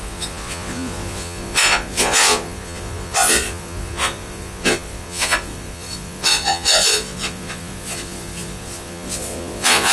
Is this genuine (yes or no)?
no